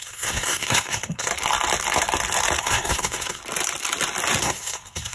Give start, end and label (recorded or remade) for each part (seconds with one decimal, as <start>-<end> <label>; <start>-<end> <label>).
0.0-1.3 remade; 1.3-2.6 recorded; 2.6-3.4 remade; 3.4-4.4 recorded; 4.4-5.1 remade